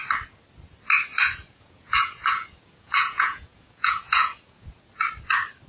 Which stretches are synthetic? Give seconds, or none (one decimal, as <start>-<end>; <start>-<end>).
1.4-4.8